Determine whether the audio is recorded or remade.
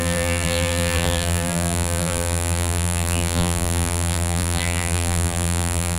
remade